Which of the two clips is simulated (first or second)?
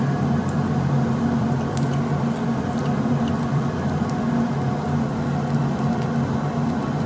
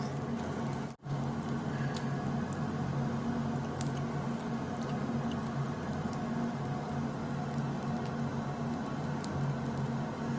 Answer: first